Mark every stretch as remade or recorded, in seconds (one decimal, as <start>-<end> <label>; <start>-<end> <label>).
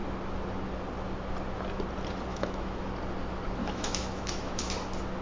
0.0-2.3 recorded; 2.3-2.9 remade; 2.9-3.6 recorded; 3.6-4.7 remade; 4.7-5.2 recorded